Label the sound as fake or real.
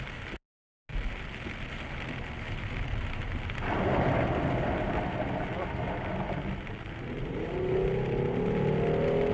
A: real